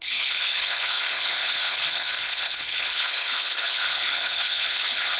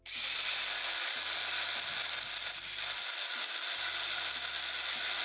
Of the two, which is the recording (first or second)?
second